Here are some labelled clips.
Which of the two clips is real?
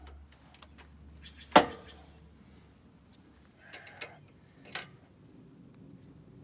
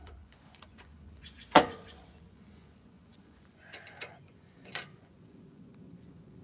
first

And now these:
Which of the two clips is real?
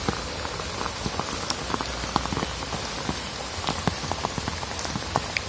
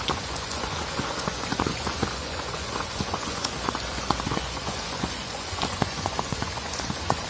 first